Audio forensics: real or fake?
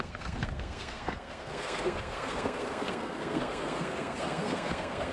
fake